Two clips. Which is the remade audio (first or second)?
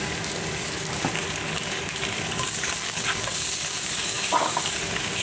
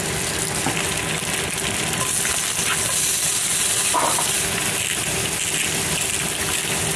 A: first